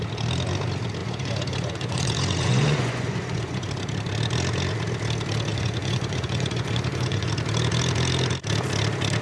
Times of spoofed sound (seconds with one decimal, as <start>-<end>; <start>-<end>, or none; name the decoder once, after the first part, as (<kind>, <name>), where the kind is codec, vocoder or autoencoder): 1.0-3.7 (vocoder, Vocos); 5.5-7.3